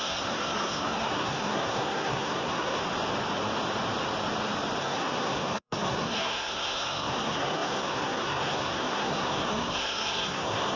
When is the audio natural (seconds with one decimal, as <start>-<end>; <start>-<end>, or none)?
2.8-4.8